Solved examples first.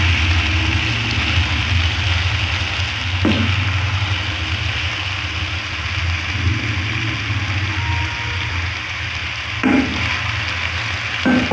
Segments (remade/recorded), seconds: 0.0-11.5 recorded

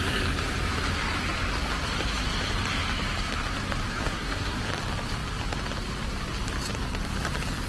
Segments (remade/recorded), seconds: 0.0-3.9 recorded; 3.9-4.6 remade; 4.6-7.7 recorded

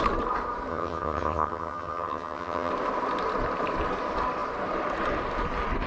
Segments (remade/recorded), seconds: 0.0-0.7 recorded; 0.7-2.7 remade; 2.7-5.9 recorded

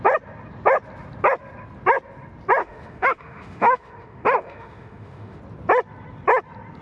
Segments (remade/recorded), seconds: 0.0-2.6 recorded; 2.6-5.4 remade; 5.4-6.8 recorded

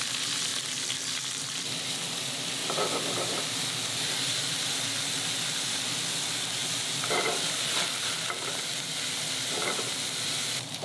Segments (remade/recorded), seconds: 0.0-10.8 recorded

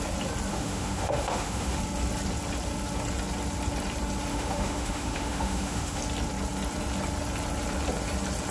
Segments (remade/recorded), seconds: 0.0-0.5 recorded; 0.5-1.8 remade; 1.8-4.3 recorded; 4.3-6.0 remade; 6.0-8.5 recorded

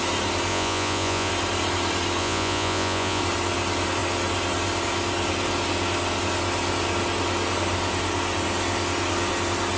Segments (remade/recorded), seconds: 0.0-0.5 recorded; 0.5-1.3 remade; 1.3-2.2 recorded; 2.2-3.2 remade; 3.2-9.8 recorded